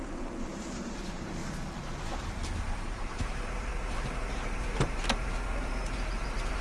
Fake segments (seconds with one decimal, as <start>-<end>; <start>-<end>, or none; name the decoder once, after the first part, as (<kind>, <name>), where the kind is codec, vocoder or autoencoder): 0.0-1.4 (vocoder, BigVGAN v2); 2.2-6.6